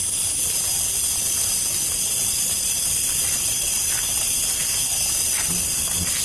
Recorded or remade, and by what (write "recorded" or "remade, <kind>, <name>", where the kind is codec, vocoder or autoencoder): recorded